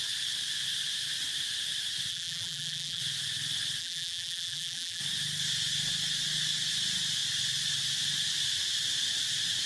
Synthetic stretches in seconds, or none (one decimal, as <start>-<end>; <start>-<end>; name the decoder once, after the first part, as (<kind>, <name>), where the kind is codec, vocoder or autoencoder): 2.1-3.0 (vocoder, BigVGAN v2); 3.8-5.0

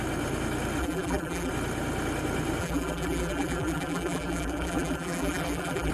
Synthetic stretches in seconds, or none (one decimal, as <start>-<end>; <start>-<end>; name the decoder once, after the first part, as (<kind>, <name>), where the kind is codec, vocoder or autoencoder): 0.8-1.5 (vocoder, BigVGAN v2); 2.6-5.9

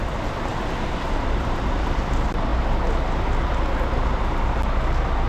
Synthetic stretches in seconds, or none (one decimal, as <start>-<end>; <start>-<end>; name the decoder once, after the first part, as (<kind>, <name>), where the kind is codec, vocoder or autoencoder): 0.5-2.0 (vocoder, BigVGAN v2)

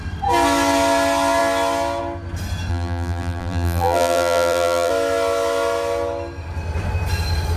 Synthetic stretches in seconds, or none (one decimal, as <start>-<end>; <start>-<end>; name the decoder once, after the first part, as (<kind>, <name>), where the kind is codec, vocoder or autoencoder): 2.7-4.9 (vocoder, BigVGAN v2)

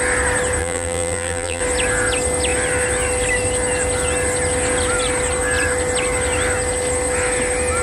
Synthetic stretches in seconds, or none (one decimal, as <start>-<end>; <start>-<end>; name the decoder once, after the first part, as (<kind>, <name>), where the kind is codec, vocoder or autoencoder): 0.6-1.6 (vocoder, BigVGAN v2)

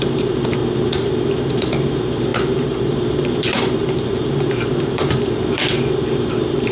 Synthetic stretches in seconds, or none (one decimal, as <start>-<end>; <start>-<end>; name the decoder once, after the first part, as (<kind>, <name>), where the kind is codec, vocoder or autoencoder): 0.0-0.6 (vocoder, BigVGAN v2); 1.3-6.7

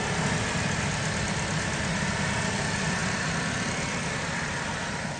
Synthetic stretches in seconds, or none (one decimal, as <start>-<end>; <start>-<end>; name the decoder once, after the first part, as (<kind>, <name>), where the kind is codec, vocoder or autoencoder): none